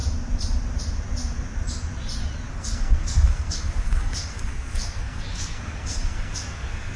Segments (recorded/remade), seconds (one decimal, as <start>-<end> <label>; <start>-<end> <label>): 0.0-2.5 recorded; 2.5-7.0 remade